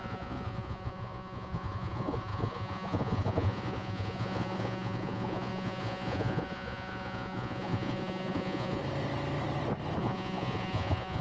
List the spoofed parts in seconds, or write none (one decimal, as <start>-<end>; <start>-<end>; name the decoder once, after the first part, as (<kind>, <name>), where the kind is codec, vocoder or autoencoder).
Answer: 0.0-8.8 (vocoder, Vocos); 10.0-11.2